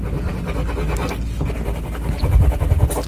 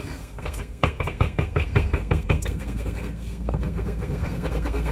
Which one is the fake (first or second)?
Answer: second